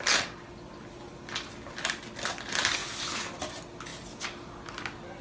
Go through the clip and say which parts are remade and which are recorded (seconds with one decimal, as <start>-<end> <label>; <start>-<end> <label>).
0.0-5.2 recorded

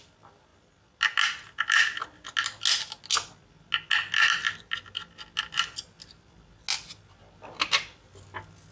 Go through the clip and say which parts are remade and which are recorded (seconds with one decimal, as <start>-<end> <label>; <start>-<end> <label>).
0.0-8.7 recorded

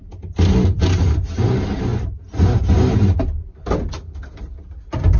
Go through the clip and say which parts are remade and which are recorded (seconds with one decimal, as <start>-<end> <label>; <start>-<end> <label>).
0.0-5.2 recorded

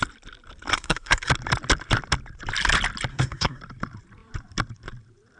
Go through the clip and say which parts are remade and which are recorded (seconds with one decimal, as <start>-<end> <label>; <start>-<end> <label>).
0.0-0.7 recorded; 0.7-1.3 remade; 1.3-3.1 recorded; 3.1-3.6 remade; 3.6-5.4 recorded

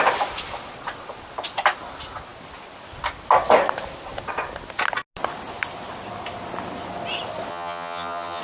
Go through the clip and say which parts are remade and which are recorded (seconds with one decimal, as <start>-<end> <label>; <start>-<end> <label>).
0.0-7.5 recorded; 7.5-8.4 remade

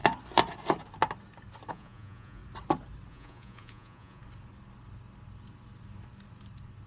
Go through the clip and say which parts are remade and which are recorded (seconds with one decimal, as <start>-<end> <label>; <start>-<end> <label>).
0.0-1.7 recorded; 1.7-2.4 remade; 2.4-3.1 recorded; 3.1-4.2 remade; 4.2-6.9 recorded